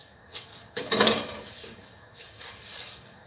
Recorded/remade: remade